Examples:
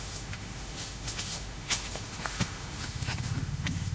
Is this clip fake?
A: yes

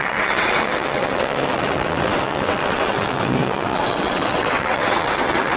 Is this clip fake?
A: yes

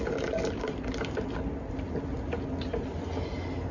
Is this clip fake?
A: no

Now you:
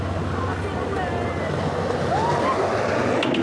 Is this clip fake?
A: no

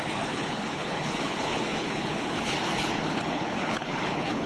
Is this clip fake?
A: yes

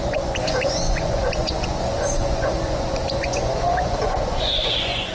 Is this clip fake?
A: yes